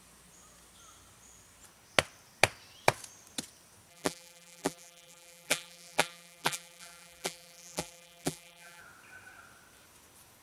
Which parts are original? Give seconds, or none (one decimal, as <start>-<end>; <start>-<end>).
0.0-3.9; 8.8-10.4